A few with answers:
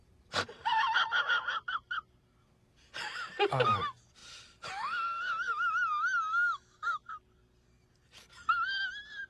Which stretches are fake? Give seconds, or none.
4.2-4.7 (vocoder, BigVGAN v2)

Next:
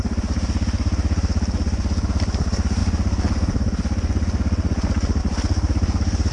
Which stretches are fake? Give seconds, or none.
none